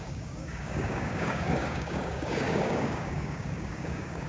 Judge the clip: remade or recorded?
remade